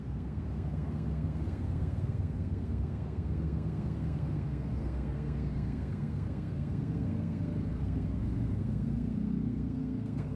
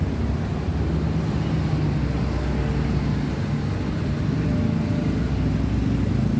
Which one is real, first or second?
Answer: second